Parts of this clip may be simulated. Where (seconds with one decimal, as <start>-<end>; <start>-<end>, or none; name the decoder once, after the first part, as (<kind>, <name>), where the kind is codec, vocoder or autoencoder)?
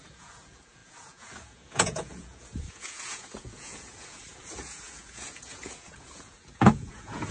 0.0-7.3 (vocoder, Vocos)